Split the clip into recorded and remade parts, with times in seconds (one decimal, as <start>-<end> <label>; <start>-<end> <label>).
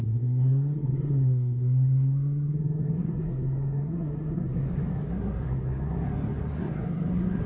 0.0-7.5 remade